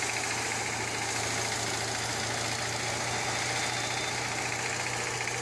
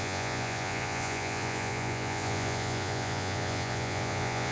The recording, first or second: first